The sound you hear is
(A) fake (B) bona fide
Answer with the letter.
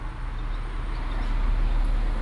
B